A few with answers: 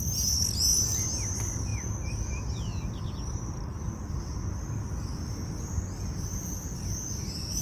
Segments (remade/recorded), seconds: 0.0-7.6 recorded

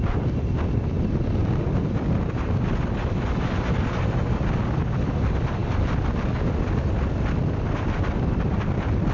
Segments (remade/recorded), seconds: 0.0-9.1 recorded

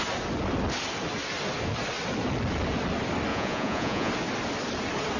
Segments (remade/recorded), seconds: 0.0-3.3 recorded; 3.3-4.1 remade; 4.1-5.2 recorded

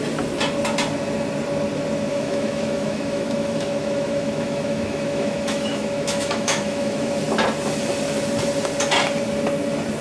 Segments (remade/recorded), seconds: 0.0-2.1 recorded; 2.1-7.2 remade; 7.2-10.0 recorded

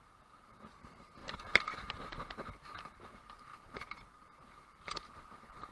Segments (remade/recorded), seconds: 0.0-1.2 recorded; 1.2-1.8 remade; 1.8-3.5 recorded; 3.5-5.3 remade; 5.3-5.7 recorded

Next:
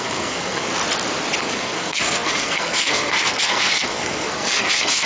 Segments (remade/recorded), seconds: 0.0-0.7 remade; 0.7-1.4 recorded; 1.4-5.1 remade

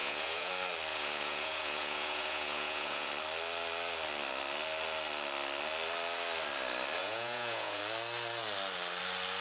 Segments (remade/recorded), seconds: 0.0-0.5 remade; 0.5-0.9 recorded; 0.9-3.1 remade; 3.1-7.0 recorded; 7.0-7.8 remade; 7.8-9.4 recorded

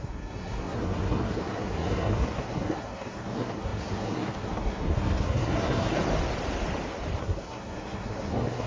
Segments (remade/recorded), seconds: 0.0-6.0 remade; 6.0-7.2 recorded; 7.2-8.7 remade